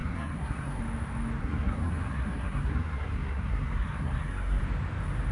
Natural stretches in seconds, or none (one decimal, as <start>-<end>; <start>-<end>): 0.8-1.4; 4.6-5.3